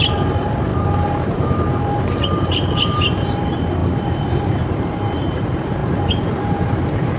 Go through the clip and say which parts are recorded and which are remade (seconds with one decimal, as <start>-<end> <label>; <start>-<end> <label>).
0.0-5.8 remade; 5.8-6.3 recorded; 6.3-7.2 remade